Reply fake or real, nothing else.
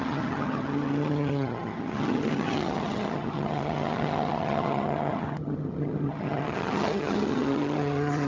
fake